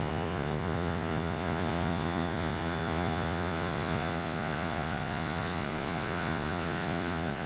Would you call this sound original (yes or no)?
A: no